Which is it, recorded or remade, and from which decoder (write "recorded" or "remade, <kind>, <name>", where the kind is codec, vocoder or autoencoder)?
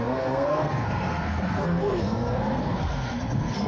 remade, codec, SNAC